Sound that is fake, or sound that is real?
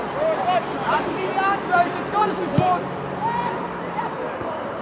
real